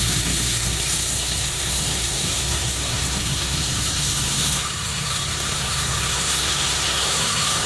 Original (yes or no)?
no